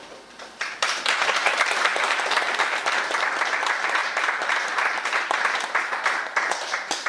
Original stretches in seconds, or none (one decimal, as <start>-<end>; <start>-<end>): none